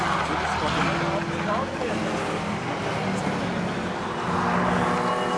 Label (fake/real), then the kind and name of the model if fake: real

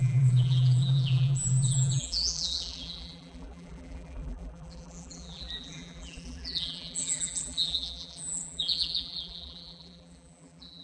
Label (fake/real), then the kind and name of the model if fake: fake, vocoder, BigVGAN v2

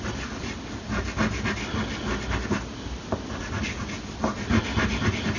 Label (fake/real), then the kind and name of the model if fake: real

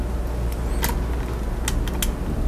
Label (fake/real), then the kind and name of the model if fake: real